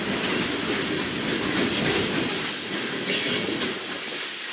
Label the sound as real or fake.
real